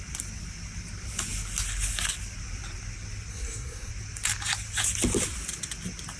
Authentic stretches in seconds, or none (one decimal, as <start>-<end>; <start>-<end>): 0.0-3.3; 3.9-6.2